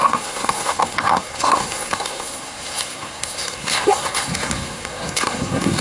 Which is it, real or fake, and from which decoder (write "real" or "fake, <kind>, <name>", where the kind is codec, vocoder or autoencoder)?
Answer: fake, codec, SNAC